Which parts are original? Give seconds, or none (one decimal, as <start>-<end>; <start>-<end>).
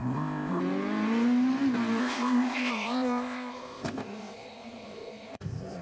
0.6-2.0